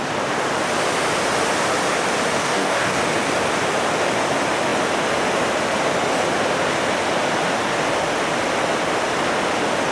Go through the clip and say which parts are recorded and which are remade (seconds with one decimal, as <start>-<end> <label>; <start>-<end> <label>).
0.0-2.4 recorded; 2.4-3.0 remade; 3.0-9.9 recorded